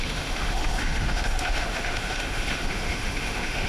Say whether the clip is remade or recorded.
remade